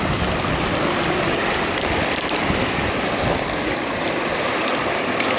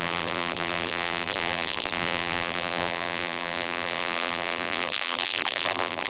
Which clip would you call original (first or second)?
first